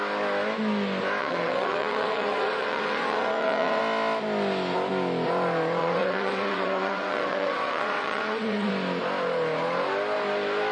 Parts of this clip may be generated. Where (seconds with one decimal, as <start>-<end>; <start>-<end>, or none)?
1.2-3.8; 5.8-8.7